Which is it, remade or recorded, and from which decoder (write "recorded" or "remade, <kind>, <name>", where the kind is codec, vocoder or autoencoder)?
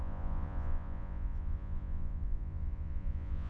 remade, vocoder, Vocos